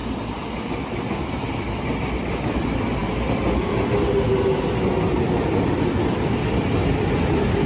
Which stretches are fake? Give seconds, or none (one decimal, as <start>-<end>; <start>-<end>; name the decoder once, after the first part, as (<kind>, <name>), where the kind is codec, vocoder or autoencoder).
none